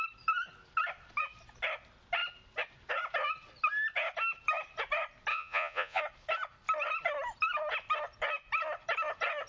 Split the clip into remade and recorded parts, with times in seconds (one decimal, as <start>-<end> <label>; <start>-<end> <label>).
0.0-5.3 recorded; 5.3-6.0 remade; 6.0-9.5 recorded